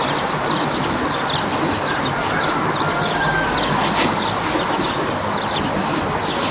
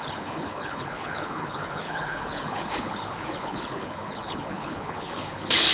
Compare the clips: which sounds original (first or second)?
first